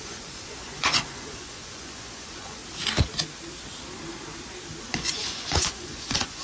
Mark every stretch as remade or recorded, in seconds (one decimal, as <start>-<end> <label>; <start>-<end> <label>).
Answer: 0.0-2.6 remade; 2.6-4.8 recorded; 4.8-6.4 remade

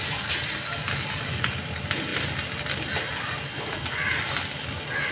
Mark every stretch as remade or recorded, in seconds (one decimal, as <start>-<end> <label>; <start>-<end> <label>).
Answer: 0.0-5.1 recorded

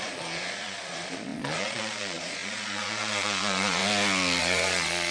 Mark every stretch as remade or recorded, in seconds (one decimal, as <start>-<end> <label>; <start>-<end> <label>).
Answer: 0.0-3.8 remade; 3.8-4.4 recorded; 4.4-5.1 remade

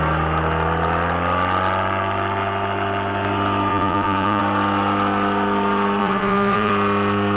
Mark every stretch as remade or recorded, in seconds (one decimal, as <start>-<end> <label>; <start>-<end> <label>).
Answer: 0.0-3.7 recorded; 3.7-4.4 remade; 4.4-6.0 recorded; 6.0-6.7 remade; 6.7-7.4 recorded

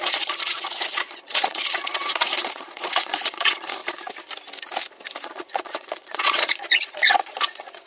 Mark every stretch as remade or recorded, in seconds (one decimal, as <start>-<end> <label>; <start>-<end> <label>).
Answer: 0.0-3.8 remade; 3.8-5.2 recorded; 5.2-7.9 remade